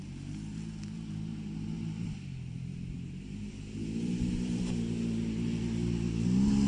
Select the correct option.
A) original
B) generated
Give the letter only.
A